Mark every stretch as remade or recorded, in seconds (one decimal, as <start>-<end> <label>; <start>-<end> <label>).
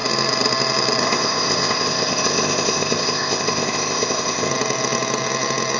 0.0-1.0 recorded; 1.0-4.5 remade; 4.5-5.8 recorded